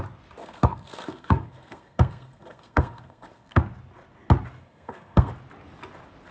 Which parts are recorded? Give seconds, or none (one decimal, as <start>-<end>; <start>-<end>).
0.0-0.4; 3.6-4.6; 5.3-6.3